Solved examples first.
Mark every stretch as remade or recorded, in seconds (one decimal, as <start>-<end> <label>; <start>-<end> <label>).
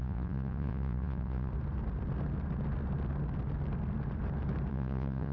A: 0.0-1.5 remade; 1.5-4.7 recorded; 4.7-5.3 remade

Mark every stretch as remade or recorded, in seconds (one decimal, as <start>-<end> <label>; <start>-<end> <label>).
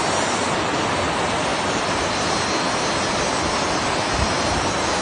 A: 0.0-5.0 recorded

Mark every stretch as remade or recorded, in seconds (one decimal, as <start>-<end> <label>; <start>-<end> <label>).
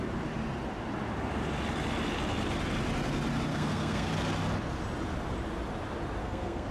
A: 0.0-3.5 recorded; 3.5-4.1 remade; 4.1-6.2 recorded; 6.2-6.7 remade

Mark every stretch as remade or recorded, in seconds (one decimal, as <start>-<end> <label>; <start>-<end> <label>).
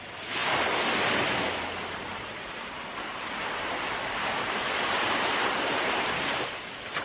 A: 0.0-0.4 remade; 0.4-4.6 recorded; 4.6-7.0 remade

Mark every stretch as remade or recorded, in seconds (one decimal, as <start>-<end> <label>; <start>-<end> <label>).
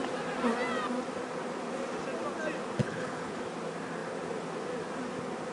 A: 0.0-2.8 recorded; 2.8-3.4 remade; 3.4-5.5 recorded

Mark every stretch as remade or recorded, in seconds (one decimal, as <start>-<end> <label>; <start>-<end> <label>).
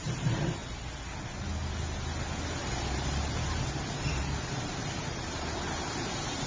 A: 0.0-0.6 remade; 0.6-4.5 recorded; 4.5-6.5 remade